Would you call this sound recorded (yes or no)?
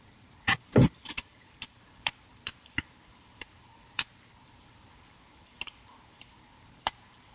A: no